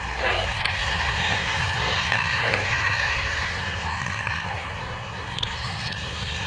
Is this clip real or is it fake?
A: fake